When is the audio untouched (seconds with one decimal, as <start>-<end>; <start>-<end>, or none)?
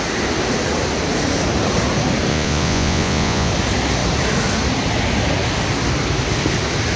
0.0-2.3; 3.5-7.0